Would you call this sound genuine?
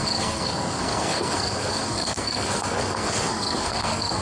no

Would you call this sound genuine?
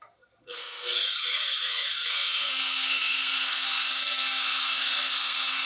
no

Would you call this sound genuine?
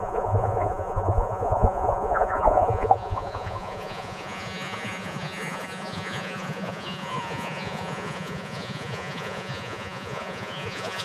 no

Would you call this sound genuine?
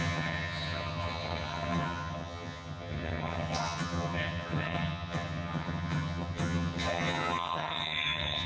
no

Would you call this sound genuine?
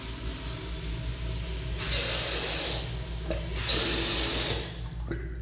yes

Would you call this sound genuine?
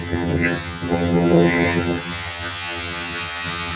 no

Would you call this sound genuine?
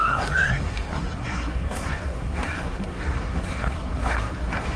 no